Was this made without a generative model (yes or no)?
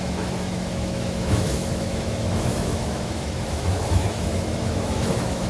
no